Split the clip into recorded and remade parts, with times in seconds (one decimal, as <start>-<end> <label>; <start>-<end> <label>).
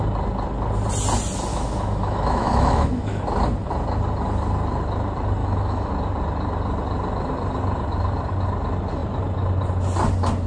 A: 0.0-1.5 recorded; 1.5-3.2 remade; 3.2-5.4 recorded; 5.4-5.9 remade; 5.9-10.5 recorded